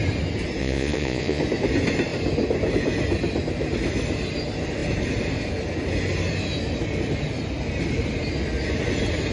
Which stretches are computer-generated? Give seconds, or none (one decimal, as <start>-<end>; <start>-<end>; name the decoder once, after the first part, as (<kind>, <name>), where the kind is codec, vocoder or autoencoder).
0.6-1.4 (vocoder, Vocos)